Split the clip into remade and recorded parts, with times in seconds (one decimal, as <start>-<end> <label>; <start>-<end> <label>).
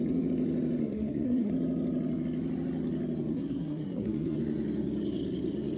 0.0-0.8 recorded; 0.8-1.5 remade; 1.5-3.3 recorded; 3.3-4.4 remade; 4.4-5.8 recorded